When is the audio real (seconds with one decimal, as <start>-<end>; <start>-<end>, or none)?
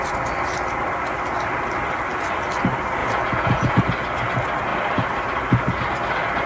0.0-3.0; 3.8-6.5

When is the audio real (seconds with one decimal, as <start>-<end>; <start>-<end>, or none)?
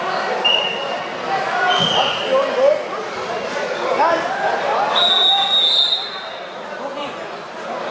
0.0-6.9; 7.5-7.9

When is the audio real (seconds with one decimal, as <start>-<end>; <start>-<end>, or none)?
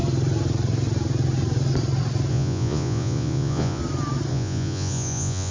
0.0-2.3; 3.8-4.3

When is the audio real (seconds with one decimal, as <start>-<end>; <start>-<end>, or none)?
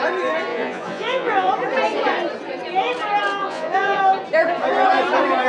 0.0-0.5; 1.5-3.4; 4.0-5.5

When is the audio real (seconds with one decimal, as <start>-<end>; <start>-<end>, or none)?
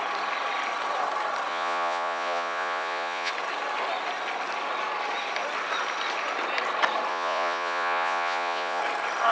0.0-1.5; 3.3-7.1; 8.8-9.3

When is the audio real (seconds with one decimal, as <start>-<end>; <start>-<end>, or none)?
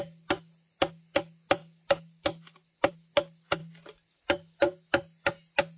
0.0-5.8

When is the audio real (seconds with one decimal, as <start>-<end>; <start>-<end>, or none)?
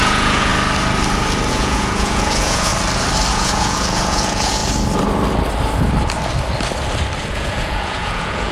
0.5-1.5; 2.7-3.3; 4.6-7.2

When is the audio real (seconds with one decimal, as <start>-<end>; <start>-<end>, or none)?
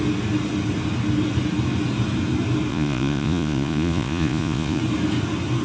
0.0-2.7; 4.8-5.6